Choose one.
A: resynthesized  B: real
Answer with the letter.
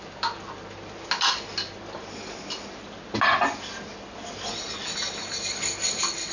B